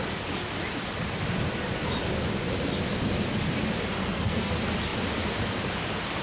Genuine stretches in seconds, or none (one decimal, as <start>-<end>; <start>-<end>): 0.0-4.0; 4.5-6.2